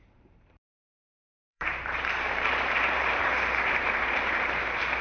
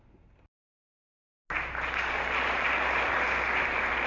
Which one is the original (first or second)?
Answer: second